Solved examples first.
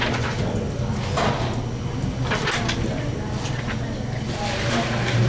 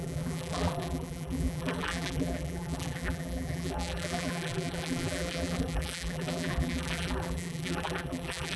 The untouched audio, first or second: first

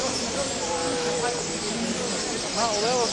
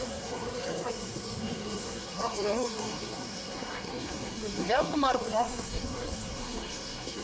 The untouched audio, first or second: first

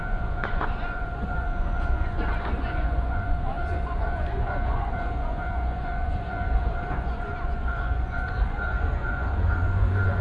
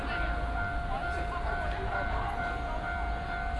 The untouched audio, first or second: second